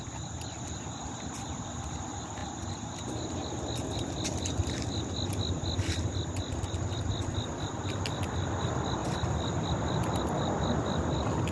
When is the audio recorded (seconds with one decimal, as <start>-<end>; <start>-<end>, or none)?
0.0-11.5